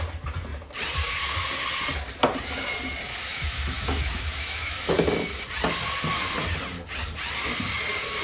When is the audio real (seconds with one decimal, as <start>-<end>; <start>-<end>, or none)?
0.0-3.1; 4.9-8.2